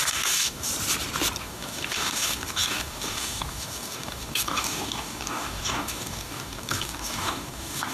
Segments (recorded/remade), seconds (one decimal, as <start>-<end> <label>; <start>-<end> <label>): 0.0-0.7 remade; 0.7-1.4 recorded; 1.4-7.9 remade